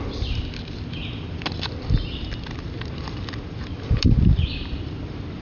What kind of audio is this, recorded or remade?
recorded